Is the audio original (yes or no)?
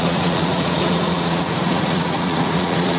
no